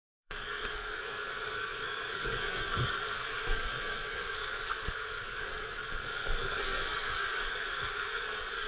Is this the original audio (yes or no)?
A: no